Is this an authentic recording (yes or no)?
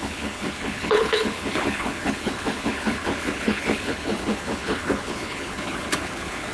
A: no